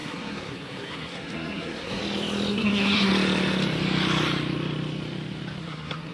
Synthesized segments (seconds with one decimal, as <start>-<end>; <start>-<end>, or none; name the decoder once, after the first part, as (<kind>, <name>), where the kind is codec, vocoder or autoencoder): 0.0-2.0 (codec, SNAC); 2.5-3.1; 5.6-6.1